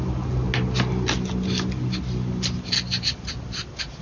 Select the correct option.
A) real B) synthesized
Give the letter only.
A